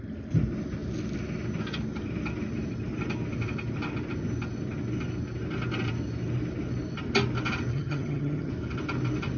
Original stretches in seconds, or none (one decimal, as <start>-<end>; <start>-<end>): 0.0-7.7; 8.5-9.4